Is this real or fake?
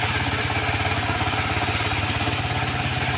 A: real